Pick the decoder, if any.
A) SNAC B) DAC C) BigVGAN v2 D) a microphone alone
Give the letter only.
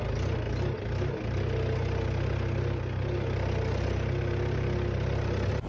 D